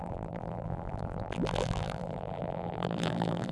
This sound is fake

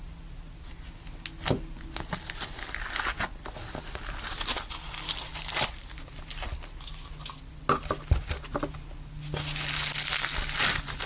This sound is real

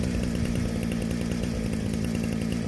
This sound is real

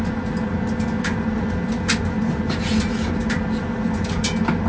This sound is real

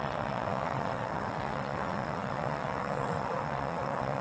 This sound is fake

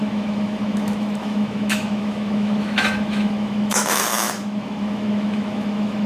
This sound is fake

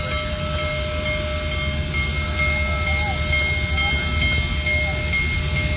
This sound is real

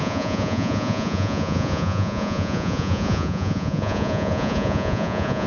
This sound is fake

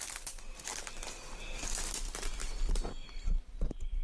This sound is real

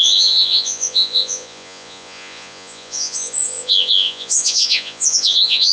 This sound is fake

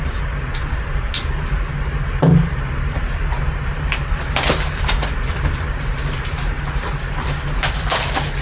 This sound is real